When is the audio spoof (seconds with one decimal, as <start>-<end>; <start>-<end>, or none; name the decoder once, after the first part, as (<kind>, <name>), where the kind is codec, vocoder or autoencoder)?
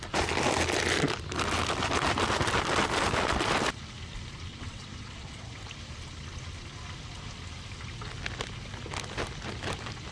4.5-5.5 (vocoder, WaveNeXt)